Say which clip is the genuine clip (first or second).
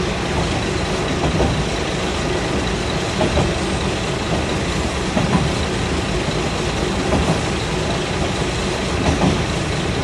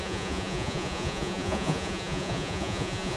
first